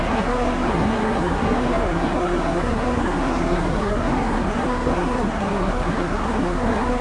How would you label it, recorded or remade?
remade